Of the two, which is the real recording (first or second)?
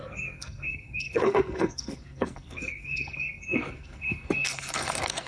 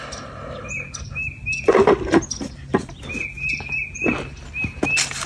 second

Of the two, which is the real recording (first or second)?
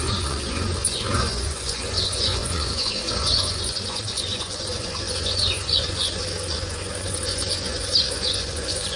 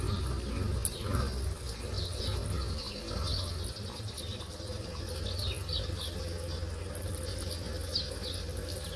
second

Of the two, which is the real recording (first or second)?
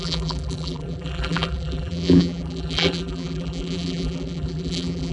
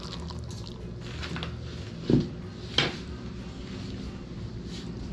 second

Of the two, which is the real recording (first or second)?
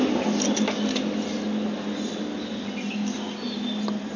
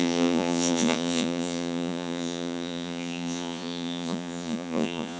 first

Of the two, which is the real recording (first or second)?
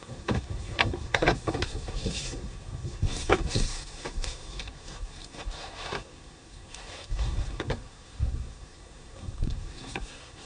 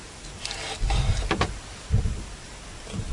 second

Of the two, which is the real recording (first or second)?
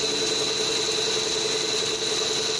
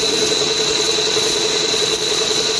first